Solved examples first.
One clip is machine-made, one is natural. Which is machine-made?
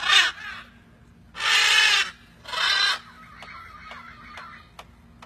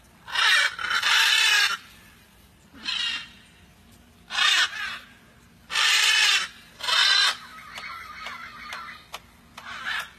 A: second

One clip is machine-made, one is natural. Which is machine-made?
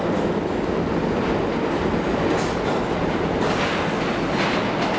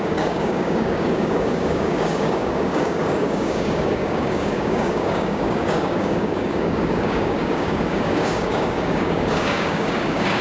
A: second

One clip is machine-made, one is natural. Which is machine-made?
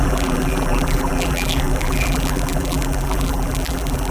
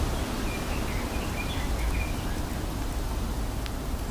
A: first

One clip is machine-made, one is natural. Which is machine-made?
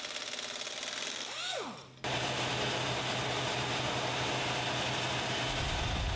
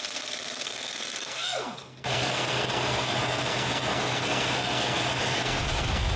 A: second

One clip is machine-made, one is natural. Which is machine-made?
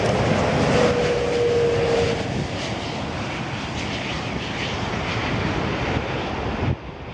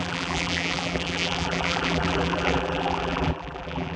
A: second